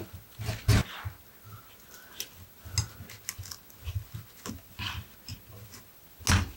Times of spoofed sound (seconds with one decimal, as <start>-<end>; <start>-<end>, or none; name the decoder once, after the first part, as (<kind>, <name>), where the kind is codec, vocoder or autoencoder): none